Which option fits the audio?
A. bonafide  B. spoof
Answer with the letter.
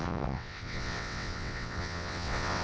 B